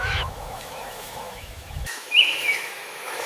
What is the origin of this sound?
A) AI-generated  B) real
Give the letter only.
A